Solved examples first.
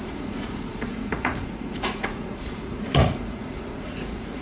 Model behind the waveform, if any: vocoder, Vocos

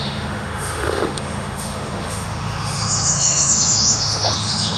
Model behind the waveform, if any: autoencoder, DAC-VAE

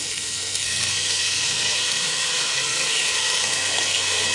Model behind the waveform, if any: codec, SNAC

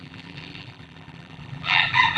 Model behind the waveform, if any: vocoder, BigVGAN v2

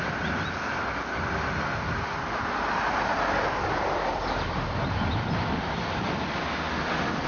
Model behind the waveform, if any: none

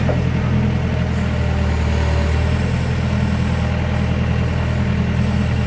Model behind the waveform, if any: none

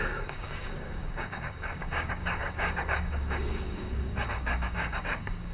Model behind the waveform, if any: codec, DAC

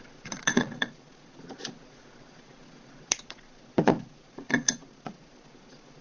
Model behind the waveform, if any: vocoder, Vocos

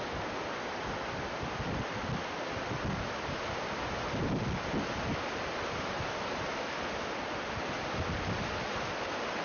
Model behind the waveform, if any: none